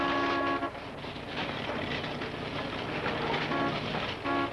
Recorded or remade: recorded